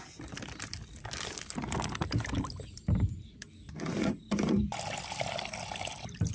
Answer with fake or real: real